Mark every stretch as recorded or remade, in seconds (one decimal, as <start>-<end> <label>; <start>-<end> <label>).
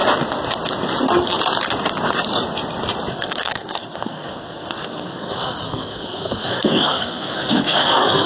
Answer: 0.0-3.1 recorded; 3.1-8.3 remade